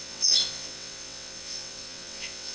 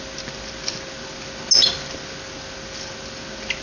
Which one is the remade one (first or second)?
first